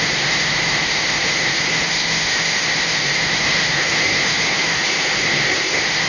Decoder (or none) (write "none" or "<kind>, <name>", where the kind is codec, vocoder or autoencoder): codec, SNAC